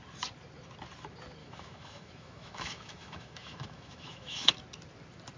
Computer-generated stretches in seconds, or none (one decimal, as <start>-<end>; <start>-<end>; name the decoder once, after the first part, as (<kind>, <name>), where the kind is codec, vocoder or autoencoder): 1.4-4.5 (autoencoder, DAC-VAE)